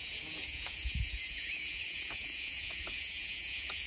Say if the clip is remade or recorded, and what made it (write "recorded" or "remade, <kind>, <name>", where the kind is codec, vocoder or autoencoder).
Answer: remade, vocoder, Vocos